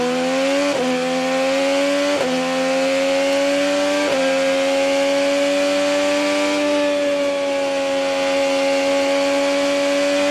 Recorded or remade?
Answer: recorded